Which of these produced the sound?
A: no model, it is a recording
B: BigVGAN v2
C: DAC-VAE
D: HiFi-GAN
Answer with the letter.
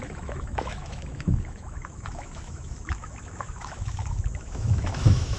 C